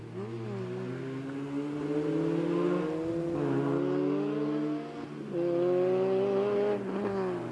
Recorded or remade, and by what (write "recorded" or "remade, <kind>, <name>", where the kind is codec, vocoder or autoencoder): recorded